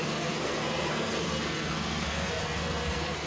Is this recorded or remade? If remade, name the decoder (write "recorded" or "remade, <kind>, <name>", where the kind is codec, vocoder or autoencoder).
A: remade, codec, SNAC